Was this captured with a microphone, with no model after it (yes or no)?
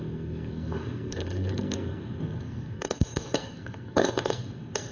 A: no